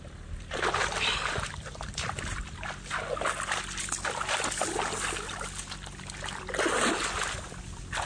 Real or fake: real